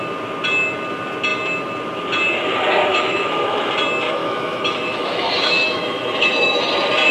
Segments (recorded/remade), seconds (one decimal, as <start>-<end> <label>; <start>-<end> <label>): 0.0-2.9 recorded; 2.9-3.7 remade; 3.7-4.2 recorded; 4.2-6.6 remade; 6.6-7.1 recorded